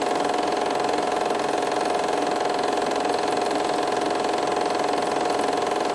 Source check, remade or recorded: recorded